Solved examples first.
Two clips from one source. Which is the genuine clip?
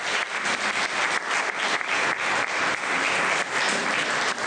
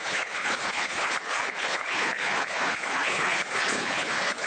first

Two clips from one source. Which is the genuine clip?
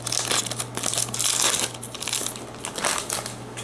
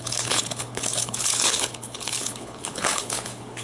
first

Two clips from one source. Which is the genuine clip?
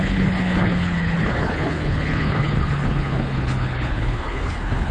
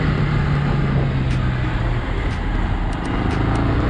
second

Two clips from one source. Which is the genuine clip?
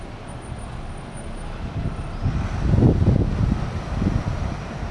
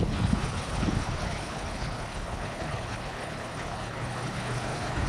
first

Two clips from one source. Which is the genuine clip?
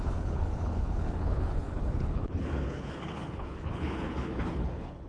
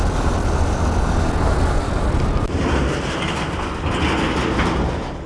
second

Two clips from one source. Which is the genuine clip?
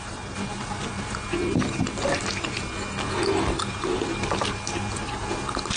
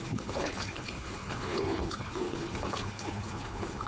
first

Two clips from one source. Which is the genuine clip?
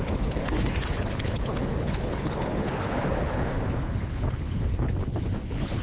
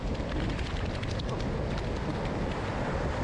second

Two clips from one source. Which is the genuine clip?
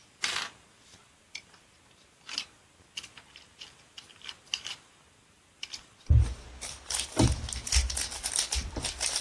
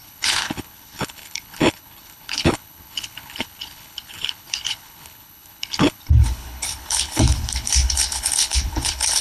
first